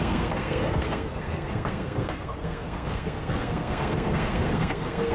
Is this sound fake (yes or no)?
yes